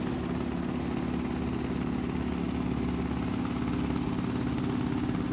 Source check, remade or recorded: recorded